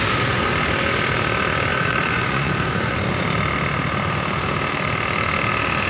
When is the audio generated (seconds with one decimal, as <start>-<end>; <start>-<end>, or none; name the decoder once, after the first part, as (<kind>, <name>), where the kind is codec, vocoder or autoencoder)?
1.7-3.2 (vocoder, Vocos)